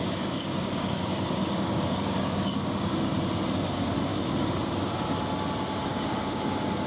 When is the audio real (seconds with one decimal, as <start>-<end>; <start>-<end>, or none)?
3.1-4.1; 4.9-5.9; 6.4-6.9